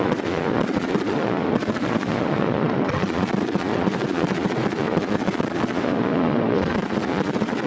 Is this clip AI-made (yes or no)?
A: yes